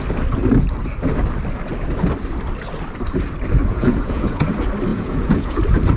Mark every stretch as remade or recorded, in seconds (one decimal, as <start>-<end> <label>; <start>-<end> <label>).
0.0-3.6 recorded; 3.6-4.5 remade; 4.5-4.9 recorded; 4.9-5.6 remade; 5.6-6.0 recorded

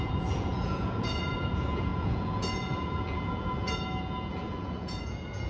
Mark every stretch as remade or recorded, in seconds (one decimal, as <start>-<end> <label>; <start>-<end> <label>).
0.0-5.5 remade

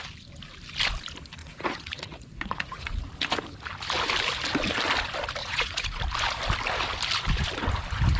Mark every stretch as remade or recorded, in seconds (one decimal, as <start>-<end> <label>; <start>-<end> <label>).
0.0-1.4 recorded; 1.4-2.9 remade; 2.9-5.4 recorded; 5.4-6.0 remade; 6.0-8.2 recorded